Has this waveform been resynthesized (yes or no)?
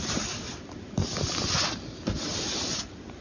no